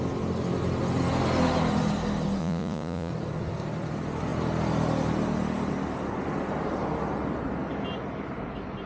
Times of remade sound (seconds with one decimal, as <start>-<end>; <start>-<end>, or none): 2.4-3.1